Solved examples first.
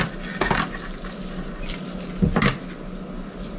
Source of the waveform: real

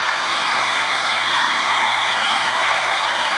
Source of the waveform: fake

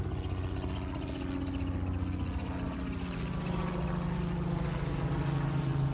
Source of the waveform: real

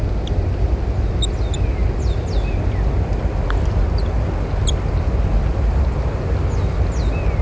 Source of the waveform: real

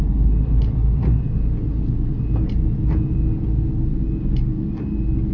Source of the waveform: real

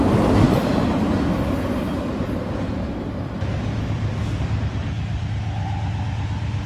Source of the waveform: real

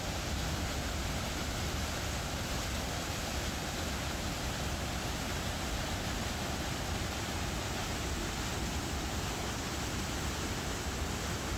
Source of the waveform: real